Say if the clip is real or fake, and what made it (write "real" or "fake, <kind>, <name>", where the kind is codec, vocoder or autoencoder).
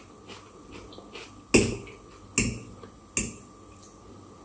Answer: real